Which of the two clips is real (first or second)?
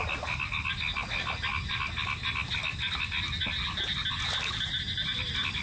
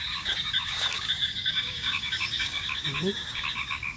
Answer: first